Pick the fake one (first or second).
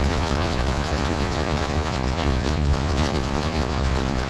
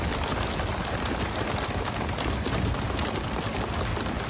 first